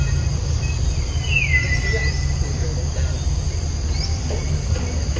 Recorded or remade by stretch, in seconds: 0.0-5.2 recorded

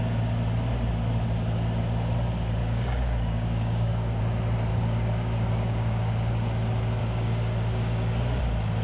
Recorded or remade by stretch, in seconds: 0.0-2.6 recorded; 2.6-4.2 remade; 4.2-4.7 recorded; 4.7-6.3 remade; 6.3-7.0 recorded; 7.0-8.4 remade; 8.4-8.8 recorded

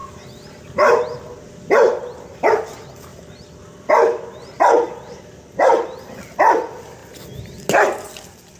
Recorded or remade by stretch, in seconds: 0.0-1.4 recorded; 1.4-7.0 remade; 7.0-8.1 recorded; 8.1-8.6 remade

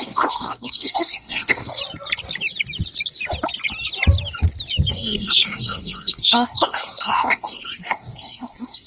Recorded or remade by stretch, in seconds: 0.0-1.8 remade; 1.8-4.9 recorded; 4.9-8.9 remade

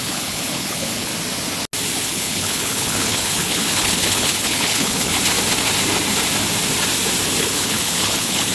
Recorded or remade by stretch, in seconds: 0.0-1.1 remade; 1.1-2.1 recorded; 2.1-5.1 remade; 5.1-7.4 recorded; 7.4-8.5 remade

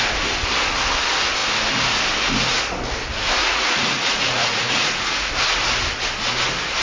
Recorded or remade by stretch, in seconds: 0.0-3.4 recorded; 3.4-5.3 remade; 5.3-6.8 recorded

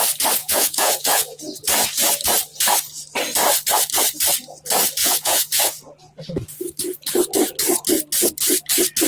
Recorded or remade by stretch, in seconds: 0.0-0.4 recorded; 0.4-1.4 remade; 1.4-5.0 recorded; 5.0-5.8 remade; 5.8-9.1 recorded